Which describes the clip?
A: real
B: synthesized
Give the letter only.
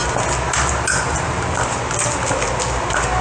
A